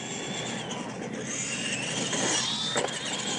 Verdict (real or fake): real